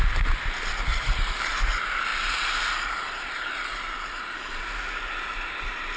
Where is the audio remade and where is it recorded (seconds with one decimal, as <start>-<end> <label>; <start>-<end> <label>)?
0.0-0.9 recorded; 0.9-1.6 remade; 1.6-2.1 recorded; 2.1-4.6 remade; 4.6-6.0 recorded